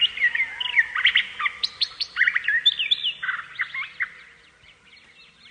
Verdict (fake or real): real